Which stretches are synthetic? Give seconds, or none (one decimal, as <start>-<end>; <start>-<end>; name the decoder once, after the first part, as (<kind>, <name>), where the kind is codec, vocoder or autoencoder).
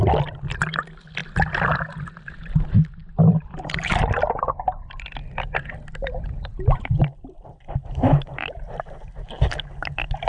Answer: 6.5-8.7 (vocoder, BigVGAN v2)